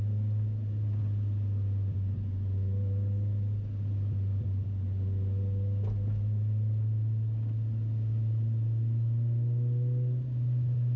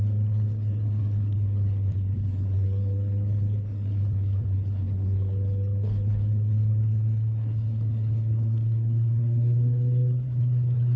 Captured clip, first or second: first